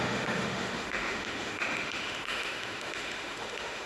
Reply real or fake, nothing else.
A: fake